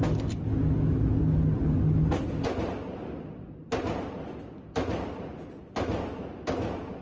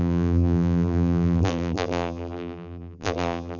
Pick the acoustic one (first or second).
first